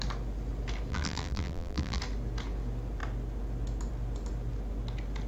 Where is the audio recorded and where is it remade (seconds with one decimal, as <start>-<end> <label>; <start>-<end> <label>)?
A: 0.0-0.9 recorded; 0.9-2.0 remade; 2.0-5.3 recorded